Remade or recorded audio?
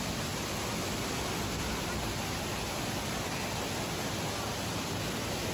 recorded